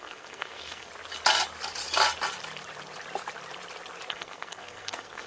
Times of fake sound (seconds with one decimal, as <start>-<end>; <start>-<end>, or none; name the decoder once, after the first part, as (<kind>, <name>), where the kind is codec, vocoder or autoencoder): 0.0-0.9 (codec, SNAC); 4.1-5.3

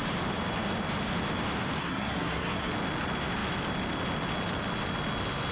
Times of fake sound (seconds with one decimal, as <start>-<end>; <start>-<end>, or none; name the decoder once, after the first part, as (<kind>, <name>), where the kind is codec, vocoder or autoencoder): 1.8-2.7 (codec, SNAC)

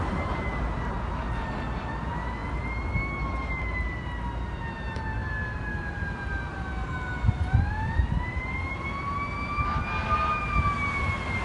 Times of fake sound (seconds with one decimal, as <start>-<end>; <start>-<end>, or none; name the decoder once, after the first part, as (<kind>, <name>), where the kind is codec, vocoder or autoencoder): none

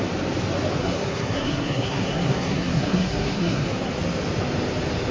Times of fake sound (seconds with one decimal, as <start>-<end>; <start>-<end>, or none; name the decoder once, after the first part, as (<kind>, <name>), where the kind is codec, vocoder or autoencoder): 0.8-3.9 (codec, SNAC)

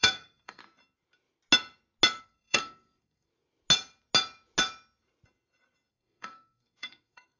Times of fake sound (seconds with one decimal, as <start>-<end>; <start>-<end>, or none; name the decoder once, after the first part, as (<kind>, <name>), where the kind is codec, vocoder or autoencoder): 0.0-0.6 (codec, SNAC); 2.2-3.3; 5.9-7.4

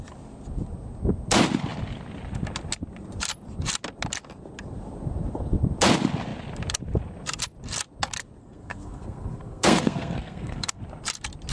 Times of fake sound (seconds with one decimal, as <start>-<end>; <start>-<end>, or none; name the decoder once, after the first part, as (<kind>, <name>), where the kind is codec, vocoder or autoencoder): 8.4-10.8 (codec, SNAC)

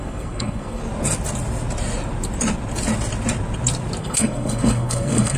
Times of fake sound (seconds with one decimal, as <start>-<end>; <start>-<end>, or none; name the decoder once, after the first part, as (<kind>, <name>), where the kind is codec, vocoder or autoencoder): 0.0-0.8 (codec, SNAC); 4.0-5.4

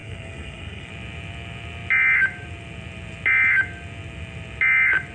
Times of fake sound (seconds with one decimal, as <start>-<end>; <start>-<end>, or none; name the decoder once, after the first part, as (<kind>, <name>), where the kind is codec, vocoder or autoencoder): 0.0-0.9 (codec, SNAC)